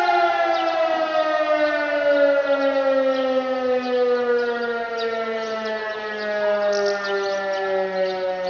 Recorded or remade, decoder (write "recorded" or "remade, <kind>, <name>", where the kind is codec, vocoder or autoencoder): recorded